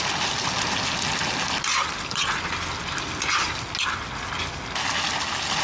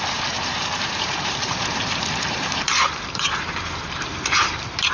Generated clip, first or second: second